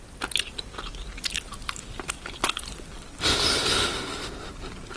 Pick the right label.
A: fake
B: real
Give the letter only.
B